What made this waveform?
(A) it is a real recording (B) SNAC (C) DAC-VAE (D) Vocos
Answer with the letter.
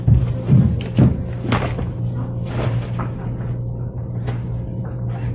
A